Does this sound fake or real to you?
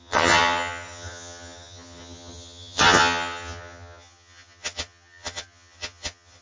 fake